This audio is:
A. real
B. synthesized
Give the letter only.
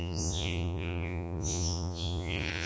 B